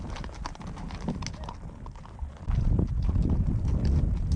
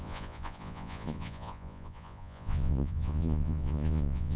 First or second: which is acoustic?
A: first